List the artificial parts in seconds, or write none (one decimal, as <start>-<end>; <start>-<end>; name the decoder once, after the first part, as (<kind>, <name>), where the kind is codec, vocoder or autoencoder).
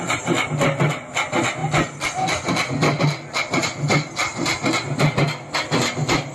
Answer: none